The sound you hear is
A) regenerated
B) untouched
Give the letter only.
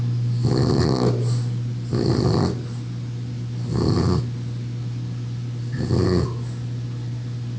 B